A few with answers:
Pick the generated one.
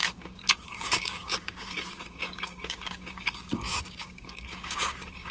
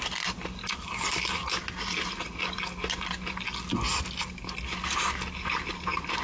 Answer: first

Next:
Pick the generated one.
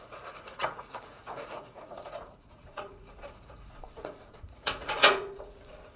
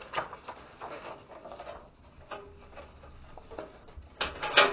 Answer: first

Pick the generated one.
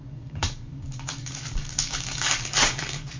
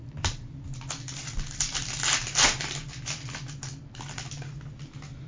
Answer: first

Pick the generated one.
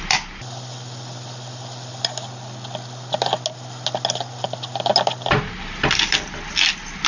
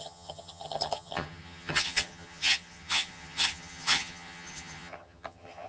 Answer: second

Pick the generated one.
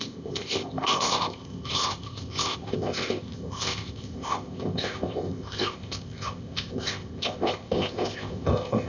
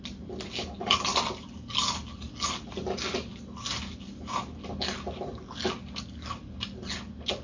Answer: first